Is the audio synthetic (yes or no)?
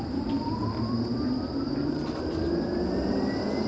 no